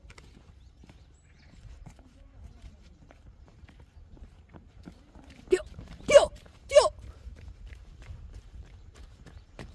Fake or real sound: fake